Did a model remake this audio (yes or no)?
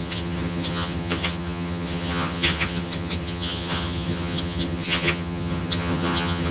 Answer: yes